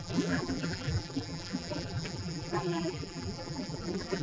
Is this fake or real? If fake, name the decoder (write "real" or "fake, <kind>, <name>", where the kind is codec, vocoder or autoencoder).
fake, vocoder, BigVGAN v2